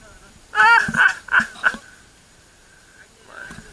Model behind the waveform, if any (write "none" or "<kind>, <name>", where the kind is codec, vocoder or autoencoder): vocoder, BigVGAN v2